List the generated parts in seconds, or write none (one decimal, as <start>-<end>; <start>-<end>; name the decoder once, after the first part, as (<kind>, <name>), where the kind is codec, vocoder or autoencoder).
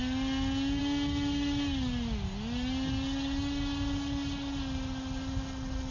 none